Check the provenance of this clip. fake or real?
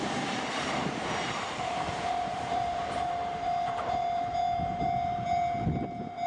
fake